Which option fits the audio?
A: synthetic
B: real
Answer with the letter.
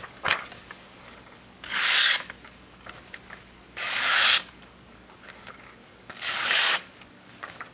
A